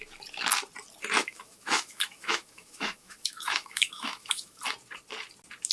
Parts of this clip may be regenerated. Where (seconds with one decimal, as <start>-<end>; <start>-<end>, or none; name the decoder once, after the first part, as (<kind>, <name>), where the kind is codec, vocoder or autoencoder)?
1.2-4.6 (autoencoder, DAC-VAE)